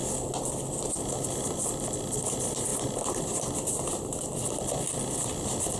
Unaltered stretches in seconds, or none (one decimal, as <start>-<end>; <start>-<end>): 0.0-1.4